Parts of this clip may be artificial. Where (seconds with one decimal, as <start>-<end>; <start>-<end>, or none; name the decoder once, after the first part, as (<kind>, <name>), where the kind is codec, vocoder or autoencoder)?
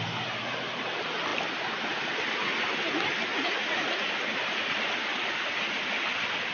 3.3-4.1 (vocoder, Vocos); 5.1-5.8